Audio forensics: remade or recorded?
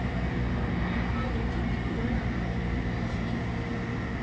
recorded